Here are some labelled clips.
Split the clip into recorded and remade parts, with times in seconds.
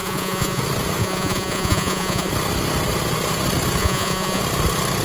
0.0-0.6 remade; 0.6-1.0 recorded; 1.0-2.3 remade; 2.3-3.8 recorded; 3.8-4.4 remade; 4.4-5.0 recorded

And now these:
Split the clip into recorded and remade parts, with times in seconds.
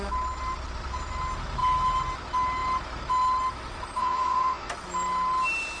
0.0-4.0 recorded; 4.0-4.7 remade; 4.7-5.8 recorded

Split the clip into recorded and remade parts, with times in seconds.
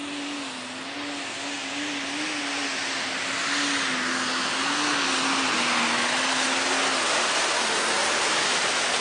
0.0-9.0 recorded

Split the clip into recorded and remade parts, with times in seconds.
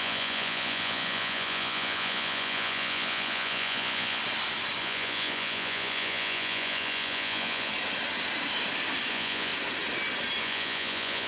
0.0-4.2 remade; 4.2-4.8 recorded; 4.8-7.7 remade; 7.7-9.1 recorded; 9.1-9.5 remade; 9.5-10.4 recorded; 10.4-11.3 remade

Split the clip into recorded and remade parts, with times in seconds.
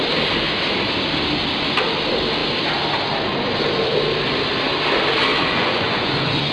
0.0-5.3 recorded; 5.3-6.5 remade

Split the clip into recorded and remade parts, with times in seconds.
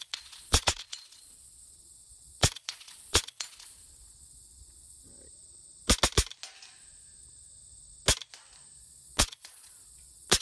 0.0-5.1 remade; 5.1-8.8 recorded; 8.8-10.4 remade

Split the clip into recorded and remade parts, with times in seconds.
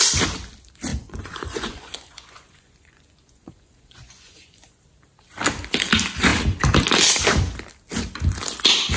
0.0-0.9 recorded; 0.9-4.8 remade; 4.8-9.0 recorded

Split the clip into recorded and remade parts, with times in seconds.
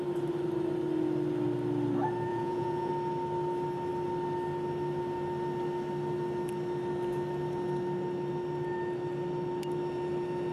0.0-2.3 recorded; 2.3-2.9 remade; 2.9-10.5 recorded